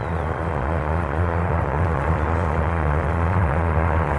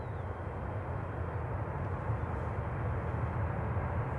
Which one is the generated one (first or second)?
first